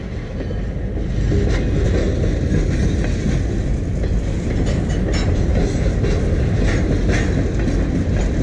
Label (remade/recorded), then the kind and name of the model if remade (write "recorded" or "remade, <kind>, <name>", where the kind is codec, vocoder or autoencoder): recorded